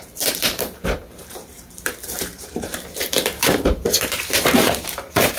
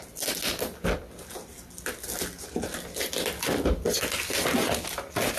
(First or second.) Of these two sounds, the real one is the second